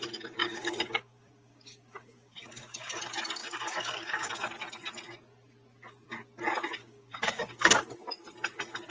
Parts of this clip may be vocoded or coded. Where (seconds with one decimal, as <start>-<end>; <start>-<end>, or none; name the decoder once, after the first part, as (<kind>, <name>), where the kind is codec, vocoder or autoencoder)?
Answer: 0.4-3.0 (codec, DAC); 3.4-4.5; 6.8-8.0

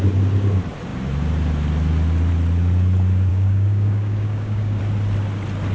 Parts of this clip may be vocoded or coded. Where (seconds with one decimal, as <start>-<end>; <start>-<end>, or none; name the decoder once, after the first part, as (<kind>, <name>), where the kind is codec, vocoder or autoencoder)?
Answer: 3.3-4.8 (codec, DAC)

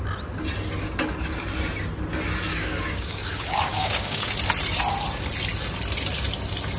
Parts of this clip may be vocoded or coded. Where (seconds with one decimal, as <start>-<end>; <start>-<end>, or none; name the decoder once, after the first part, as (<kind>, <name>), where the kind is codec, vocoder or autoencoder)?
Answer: 2.5-4.3 (codec, DAC)

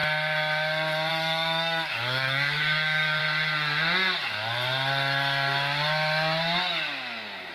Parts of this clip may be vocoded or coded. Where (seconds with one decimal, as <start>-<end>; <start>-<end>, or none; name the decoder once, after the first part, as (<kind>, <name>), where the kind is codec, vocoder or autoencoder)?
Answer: 1.1-3.2 (codec, DAC)

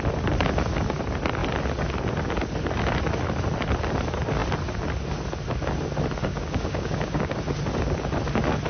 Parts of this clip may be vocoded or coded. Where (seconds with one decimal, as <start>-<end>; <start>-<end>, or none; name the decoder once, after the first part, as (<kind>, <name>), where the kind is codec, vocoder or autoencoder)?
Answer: 6.2-7.3 (codec, DAC)